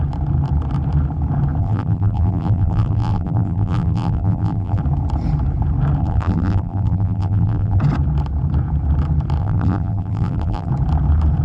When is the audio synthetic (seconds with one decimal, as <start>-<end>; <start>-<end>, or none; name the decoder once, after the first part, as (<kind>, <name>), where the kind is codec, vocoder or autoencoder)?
1.6-4.8 (vocoder, BigVGAN v2); 6.0-7.8; 9.4-10.7